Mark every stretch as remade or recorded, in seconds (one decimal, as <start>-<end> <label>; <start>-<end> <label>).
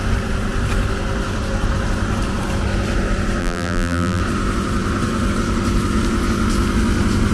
0.0-3.4 recorded; 3.4-4.2 remade; 4.2-7.3 recorded